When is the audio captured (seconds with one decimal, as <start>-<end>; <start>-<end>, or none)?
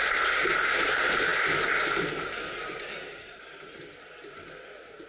0.0-5.1